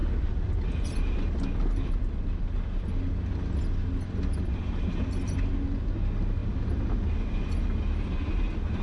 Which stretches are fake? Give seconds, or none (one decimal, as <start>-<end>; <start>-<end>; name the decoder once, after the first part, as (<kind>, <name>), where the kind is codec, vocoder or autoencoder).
none